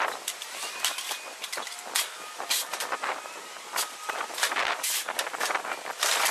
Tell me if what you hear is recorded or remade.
remade